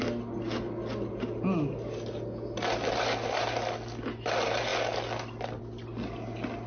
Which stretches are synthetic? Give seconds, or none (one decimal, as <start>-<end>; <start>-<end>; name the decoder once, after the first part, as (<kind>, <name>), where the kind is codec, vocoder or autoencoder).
none